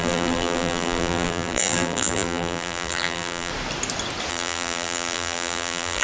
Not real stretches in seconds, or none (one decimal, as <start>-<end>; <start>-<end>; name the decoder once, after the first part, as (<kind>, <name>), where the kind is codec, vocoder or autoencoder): 0.0-3.5 (vocoder, BigVGAN v2); 4.3-6.0